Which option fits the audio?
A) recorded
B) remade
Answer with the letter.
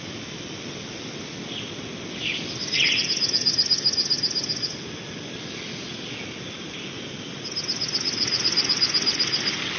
A